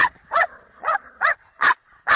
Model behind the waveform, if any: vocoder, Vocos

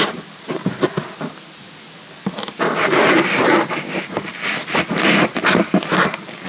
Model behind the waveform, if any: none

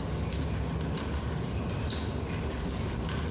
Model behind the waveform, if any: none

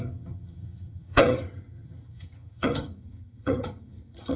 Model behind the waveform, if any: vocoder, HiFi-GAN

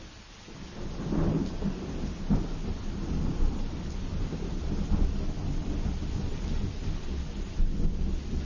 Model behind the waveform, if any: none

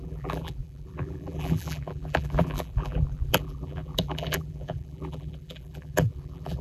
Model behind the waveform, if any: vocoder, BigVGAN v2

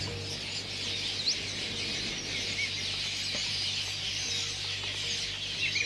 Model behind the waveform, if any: none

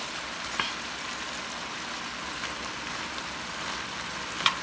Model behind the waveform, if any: none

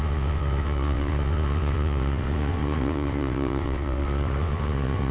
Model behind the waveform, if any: vocoder, WaveNeXt